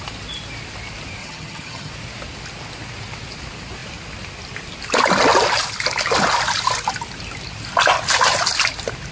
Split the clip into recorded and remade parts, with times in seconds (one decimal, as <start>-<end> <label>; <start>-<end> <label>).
0.0-1.2 recorded; 1.2-1.9 remade; 1.9-9.1 recorded

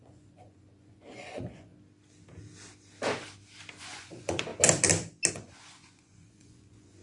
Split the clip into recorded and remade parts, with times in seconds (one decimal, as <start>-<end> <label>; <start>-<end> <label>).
0.0-1.7 remade; 1.7-3.8 recorded; 3.8-4.5 remade; 4.5-5.3 recorded; 5.3-7.0 remade